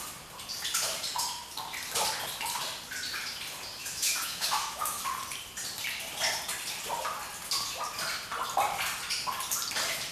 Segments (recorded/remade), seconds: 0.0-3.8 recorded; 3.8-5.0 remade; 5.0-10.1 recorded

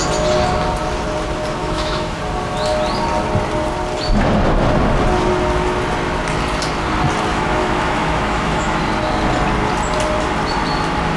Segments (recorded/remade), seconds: 0.0-1.6 recorded; 1.6-2.2 remade; 2.2-7.3 recorded; 7.3-8.8 remade; 8.8-11.2 recorded

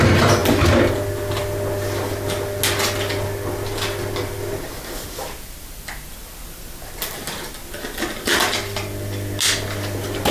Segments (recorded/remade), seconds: 0.0-10.3 recorded